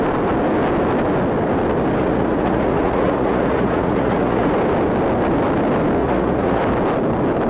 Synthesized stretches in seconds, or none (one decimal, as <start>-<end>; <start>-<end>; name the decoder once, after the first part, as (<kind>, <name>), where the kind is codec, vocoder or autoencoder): 2.0-4.5 (vocoder, Vocos); 6.0-6.6